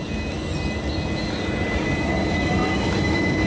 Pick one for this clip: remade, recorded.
recorded